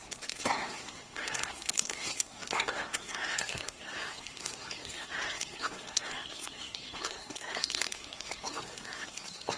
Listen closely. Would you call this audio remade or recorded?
remade